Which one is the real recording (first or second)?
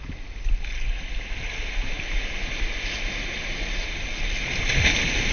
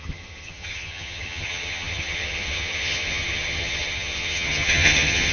first